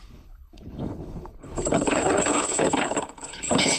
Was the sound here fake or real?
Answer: fake